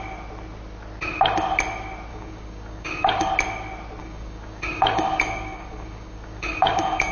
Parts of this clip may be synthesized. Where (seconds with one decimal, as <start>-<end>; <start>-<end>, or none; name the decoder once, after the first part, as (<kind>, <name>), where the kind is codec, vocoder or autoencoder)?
2.1-3.3 (codec, DAC); 4.0-7.1